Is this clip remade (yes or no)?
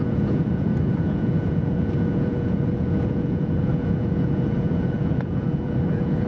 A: yes